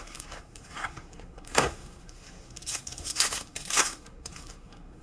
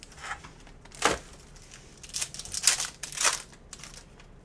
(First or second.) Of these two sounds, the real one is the second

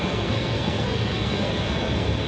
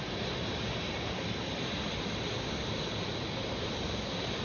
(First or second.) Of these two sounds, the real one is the second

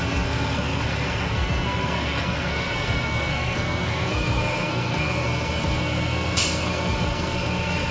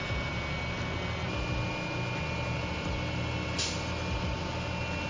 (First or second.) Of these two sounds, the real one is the second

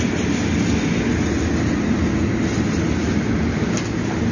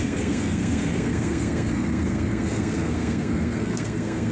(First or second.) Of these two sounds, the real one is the first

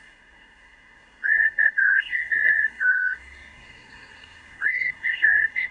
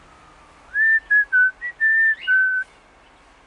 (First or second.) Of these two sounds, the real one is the second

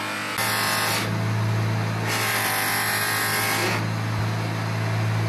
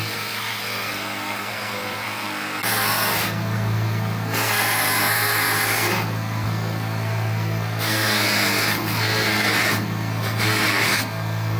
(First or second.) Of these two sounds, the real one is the first